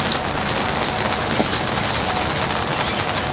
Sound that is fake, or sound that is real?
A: real